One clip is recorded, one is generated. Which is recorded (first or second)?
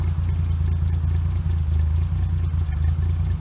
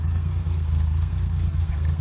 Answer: first